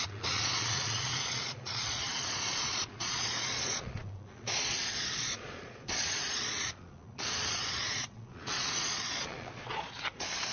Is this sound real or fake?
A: fake